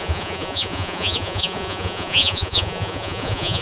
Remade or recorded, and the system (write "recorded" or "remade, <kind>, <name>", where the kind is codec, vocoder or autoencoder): remade, vocoder, Vocos